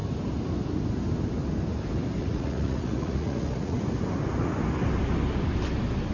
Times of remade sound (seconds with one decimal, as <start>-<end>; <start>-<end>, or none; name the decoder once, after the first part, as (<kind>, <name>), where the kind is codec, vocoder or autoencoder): 2.2-3.8 (vocoder, Vocos)